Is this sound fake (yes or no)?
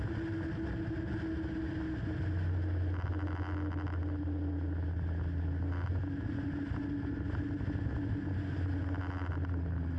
no